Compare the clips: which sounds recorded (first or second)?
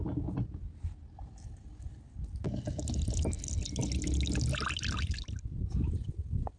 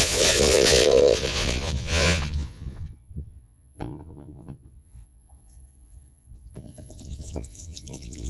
first